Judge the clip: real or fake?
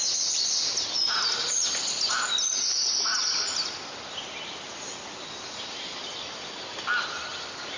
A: real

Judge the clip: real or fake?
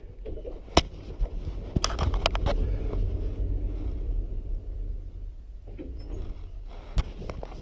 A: real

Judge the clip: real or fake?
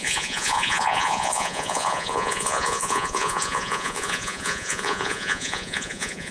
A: fake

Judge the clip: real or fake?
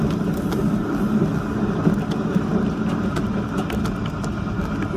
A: real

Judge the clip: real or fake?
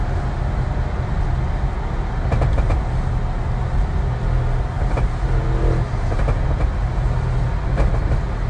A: real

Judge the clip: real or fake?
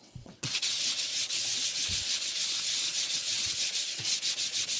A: fake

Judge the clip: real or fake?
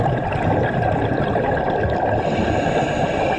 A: real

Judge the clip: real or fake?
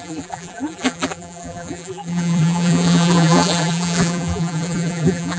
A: fake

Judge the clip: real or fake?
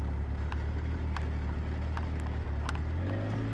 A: real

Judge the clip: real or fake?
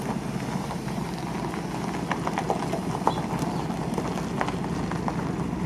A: real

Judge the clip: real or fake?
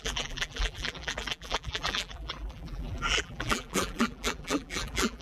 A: fake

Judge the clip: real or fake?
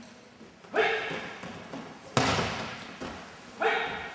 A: real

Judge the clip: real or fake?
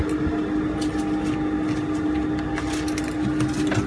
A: real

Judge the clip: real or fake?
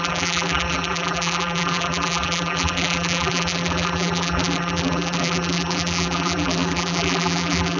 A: fake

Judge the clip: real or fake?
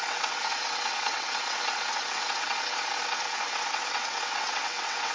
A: fake